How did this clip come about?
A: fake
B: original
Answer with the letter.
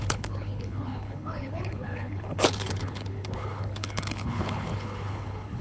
A